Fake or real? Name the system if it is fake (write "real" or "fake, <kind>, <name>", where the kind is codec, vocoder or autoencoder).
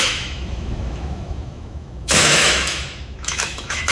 fake, autoencoder, DAC-VAE